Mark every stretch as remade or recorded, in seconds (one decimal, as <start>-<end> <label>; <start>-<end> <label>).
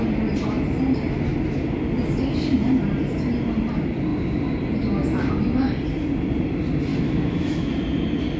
0.0-6.9 recorded; 6.9-7.7 remade; 7.7-8.4 recorded